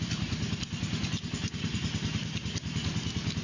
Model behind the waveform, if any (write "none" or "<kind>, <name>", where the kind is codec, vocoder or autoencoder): none